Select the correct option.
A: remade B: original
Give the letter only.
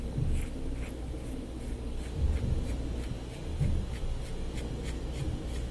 B